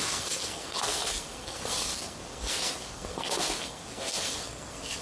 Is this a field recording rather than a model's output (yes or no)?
no